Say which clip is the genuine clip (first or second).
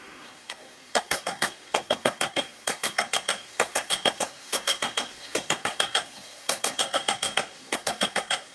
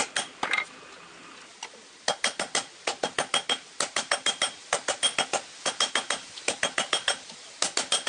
second